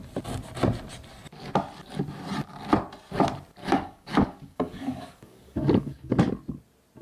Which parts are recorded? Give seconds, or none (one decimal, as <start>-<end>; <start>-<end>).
0.0-3.6; 6.3-7.0